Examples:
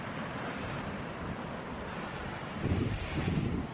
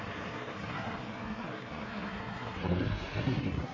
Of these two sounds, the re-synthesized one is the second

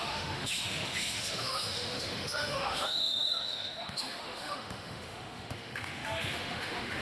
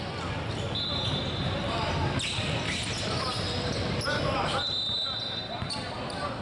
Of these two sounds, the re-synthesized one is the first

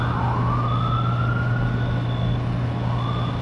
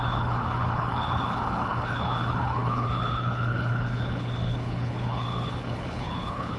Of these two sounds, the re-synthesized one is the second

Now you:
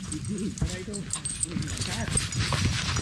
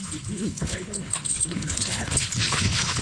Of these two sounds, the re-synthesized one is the second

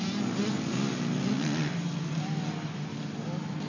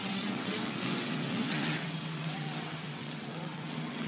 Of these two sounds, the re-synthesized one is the second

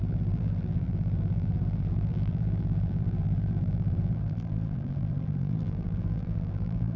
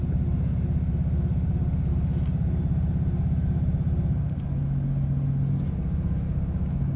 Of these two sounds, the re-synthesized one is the first